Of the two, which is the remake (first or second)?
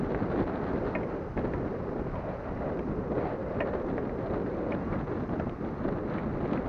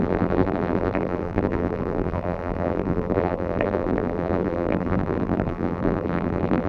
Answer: second